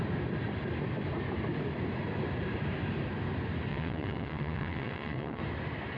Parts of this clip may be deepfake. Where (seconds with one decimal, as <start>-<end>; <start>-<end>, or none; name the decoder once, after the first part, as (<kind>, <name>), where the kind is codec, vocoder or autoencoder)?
3.7-5.4 (vocoder, WaveNeXt)

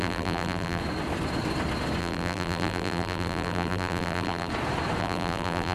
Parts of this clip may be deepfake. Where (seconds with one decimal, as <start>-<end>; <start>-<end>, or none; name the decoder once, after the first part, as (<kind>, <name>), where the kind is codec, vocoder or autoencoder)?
0.0-0.8 (vocoder, BigVGAN v2); 2.0-4.5; 5.0-5.7

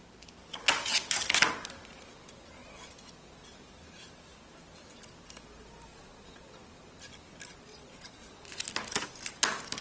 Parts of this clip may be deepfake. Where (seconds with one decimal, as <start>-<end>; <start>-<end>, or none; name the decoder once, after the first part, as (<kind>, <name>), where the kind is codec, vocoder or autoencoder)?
2.6-3.3 (vocoder, Vocos); 5.9-6.5; 7.7-8.5

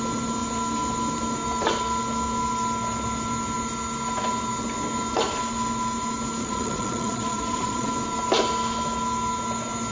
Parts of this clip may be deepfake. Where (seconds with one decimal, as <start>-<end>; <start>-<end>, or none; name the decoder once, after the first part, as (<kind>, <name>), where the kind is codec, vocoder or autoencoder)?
6.4-7.9 (vocoder, Vocos)

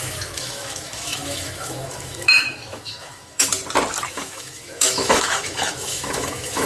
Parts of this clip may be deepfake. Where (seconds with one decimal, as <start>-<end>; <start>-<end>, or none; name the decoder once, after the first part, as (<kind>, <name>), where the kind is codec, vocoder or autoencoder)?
0.0-3.5 (autoencoder, DAC-VAE); 4.1-6.7